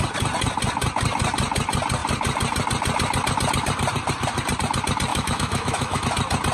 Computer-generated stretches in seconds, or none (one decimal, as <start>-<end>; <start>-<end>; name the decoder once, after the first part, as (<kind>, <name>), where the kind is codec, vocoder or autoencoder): 5.1-6.0 (autoencoder, DAC-VAE)